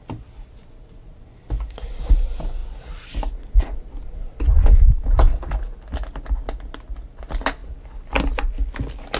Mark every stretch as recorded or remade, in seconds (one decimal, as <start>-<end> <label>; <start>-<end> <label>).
0.0-9.2 recorded